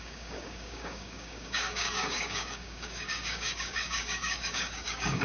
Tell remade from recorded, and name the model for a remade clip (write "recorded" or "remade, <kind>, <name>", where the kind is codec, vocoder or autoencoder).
remade, codec, DAC